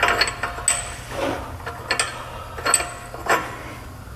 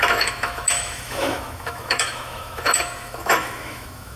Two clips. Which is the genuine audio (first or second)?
first